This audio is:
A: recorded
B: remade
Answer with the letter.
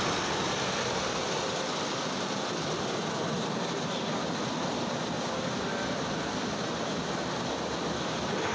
A